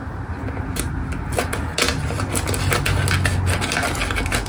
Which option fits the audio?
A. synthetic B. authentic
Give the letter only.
B